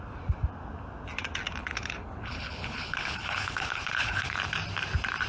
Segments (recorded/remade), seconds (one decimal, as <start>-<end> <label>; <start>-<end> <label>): 0.0-1.6 recorded; 1.6-4.4 remade; 4.4-5.3 recorded